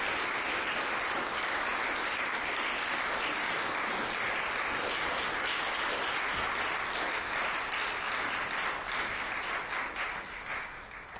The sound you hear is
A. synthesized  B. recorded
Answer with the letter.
B